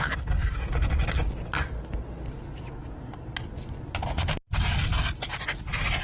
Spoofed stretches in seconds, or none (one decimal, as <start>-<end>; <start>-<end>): none